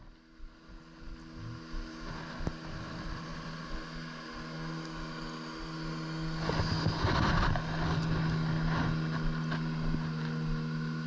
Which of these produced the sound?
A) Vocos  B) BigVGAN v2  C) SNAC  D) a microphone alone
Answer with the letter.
D